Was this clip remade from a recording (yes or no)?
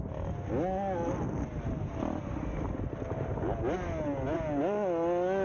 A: no